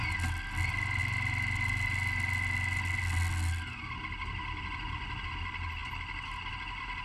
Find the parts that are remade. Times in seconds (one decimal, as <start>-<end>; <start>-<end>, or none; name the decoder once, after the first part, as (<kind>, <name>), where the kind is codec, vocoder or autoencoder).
none